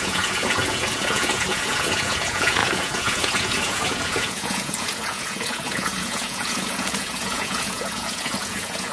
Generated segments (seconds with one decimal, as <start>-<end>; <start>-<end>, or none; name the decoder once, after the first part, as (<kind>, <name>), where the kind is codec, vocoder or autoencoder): 0.0-8.9 (vocoder, Vocos)